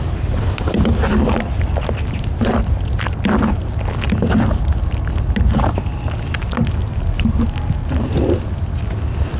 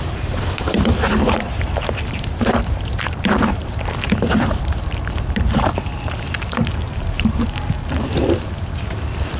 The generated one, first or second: second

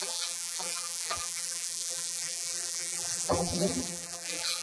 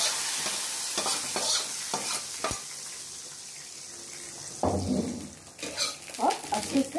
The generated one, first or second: first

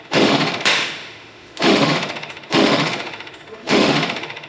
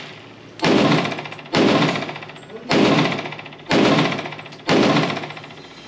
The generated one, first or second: first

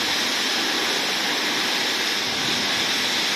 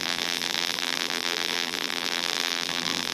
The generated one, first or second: second